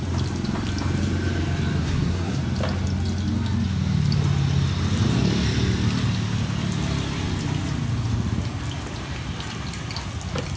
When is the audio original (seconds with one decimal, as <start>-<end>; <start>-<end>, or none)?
0.0-1.8; 2.4-10.6